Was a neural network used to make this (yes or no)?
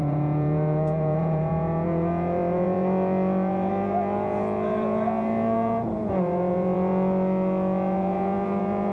yes